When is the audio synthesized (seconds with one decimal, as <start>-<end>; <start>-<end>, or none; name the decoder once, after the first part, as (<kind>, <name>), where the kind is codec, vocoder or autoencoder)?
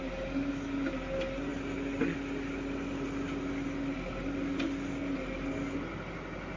none